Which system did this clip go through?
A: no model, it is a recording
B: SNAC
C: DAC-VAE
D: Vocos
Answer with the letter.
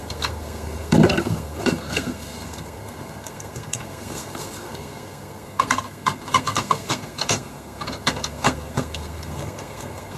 B